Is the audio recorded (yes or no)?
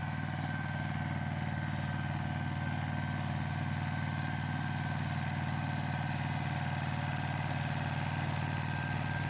yes